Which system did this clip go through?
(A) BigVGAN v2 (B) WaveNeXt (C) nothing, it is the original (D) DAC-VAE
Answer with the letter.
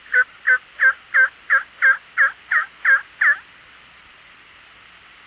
C